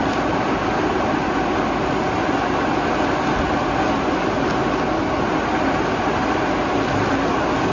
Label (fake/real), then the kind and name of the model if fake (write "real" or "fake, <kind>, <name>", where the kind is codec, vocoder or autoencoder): real